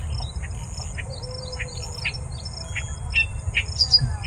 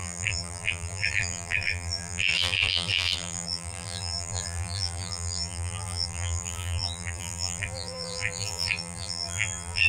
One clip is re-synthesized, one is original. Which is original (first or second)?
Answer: first